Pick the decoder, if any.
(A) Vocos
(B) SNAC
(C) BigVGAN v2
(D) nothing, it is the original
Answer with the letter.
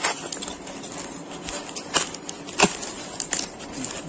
C